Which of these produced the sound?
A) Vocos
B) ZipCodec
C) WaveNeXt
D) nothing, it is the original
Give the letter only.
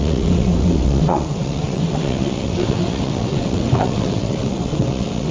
C